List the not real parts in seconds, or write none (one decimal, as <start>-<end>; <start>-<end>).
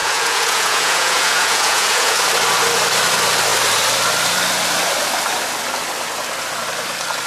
0.0-2.2